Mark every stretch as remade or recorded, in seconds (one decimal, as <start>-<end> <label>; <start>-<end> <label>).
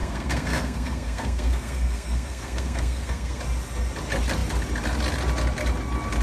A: 0.0-3.4 remade; 3.4-6.2 recorded